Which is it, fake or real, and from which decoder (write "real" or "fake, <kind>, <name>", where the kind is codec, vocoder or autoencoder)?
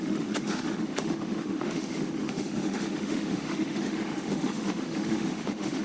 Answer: fake, autoencoder, DAC-VAE